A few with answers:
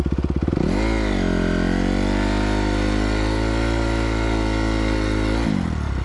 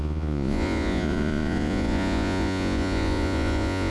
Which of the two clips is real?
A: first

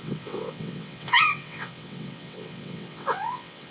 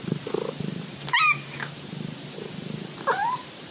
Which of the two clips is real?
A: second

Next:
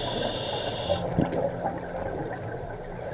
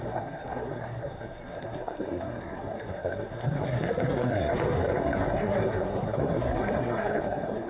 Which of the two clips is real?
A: first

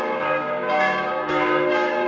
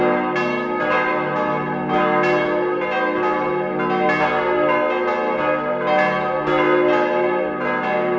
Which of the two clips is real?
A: second